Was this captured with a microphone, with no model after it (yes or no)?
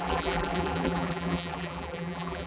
no